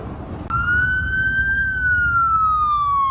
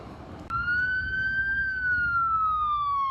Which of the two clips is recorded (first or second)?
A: first